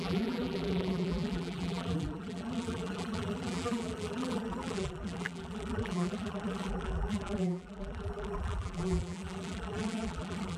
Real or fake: fake